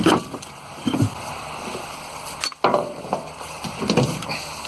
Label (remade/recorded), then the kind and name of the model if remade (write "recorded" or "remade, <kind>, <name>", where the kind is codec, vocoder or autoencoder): recorded